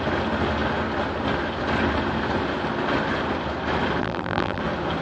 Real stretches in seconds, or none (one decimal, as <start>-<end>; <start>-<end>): 0.0-4.0; 4.6-5.0

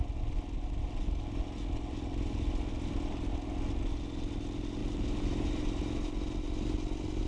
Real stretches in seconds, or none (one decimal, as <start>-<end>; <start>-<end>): 0.0-4.8; 5.8-7.3

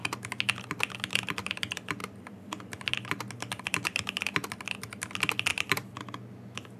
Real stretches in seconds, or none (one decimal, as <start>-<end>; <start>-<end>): 0.0-2.0; 2.9-5.5; 6.0-6.8

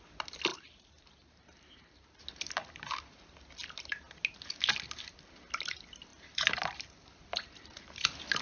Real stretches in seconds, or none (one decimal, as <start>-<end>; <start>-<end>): 0.0-0.5; 2.2-6.1; 7.2-8.4

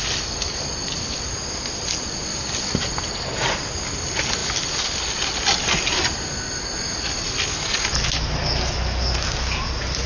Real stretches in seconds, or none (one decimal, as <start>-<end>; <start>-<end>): 0.0-10.1